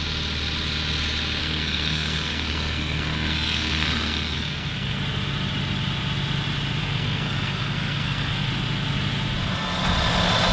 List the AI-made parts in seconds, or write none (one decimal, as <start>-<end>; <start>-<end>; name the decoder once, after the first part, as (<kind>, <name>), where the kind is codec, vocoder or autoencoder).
1.4-5.0 (codec, SNAC); 6.8-8.5